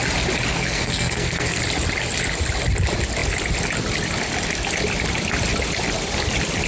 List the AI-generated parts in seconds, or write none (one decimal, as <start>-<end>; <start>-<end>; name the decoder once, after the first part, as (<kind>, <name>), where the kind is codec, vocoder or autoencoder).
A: 0.5-1.6 (codec, SNAC)